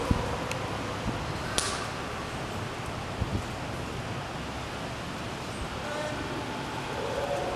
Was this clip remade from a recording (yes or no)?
no